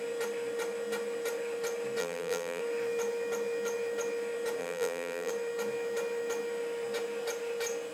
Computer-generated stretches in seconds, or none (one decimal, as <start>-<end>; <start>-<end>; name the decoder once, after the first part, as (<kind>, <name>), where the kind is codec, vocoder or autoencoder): 2.0-2.6 (vocoder, BigVGAN v2); 4.6-5.3